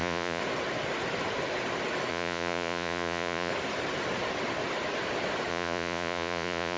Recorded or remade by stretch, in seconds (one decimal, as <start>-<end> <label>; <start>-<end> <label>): 0.0-0.4 remade; 0.4-2.1 recorded; 2.1-3.5 remade; 3.5-5.5 recorded; 5.5-6.8 remade